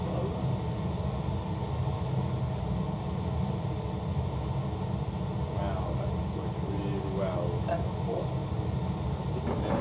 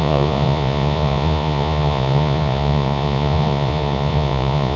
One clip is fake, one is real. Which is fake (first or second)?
second